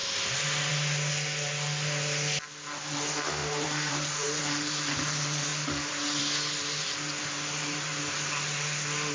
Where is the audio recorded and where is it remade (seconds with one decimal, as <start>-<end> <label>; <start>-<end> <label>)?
0.0-3.4 recorded; 3.4-4.4 remade; 4.4-9.1 recorded